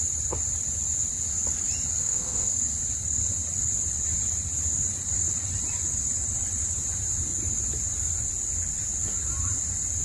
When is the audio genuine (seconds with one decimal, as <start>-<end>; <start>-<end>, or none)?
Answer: 0.0-2.0; 2.5-10.0